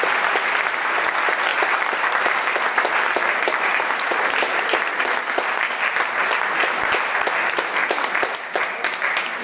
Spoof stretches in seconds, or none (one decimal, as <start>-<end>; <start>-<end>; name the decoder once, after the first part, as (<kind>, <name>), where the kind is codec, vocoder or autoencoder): 1.5-2.6 (vocoder, BigVGAN v2)